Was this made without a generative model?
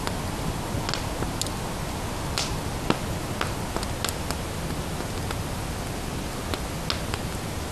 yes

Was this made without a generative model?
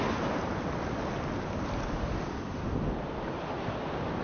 yes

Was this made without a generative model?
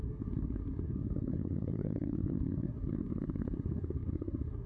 no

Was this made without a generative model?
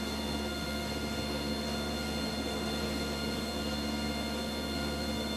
no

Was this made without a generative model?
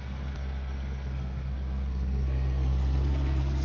no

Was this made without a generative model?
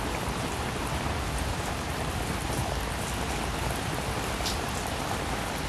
yes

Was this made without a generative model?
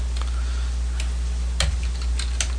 yes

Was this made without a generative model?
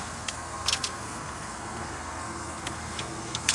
no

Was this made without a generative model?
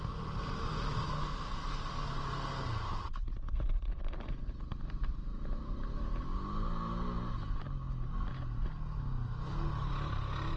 yes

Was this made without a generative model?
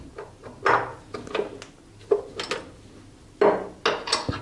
yes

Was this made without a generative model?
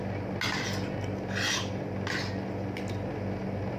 yes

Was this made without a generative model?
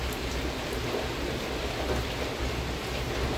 yes